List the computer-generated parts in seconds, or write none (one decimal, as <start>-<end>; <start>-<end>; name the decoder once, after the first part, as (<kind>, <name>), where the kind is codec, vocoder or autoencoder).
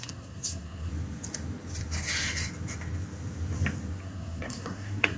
0.0-0.9 (codec, SNAC); 4.0-5.2